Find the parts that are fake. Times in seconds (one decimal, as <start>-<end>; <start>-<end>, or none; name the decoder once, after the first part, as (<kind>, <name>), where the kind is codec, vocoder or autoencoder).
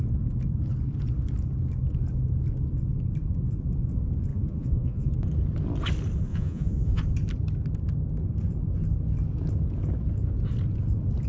4.3-5.1 (vocoder, Vocos); 6.3-7.0